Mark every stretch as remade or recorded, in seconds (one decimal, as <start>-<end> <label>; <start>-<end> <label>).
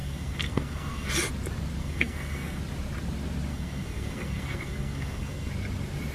0.0-1.1 remade; 1.1-1.8 recorded; 1.8-2.6 remade; 2.6-3.5 recorded; 3.5-5.5 remade; 5.5-6.1 recorded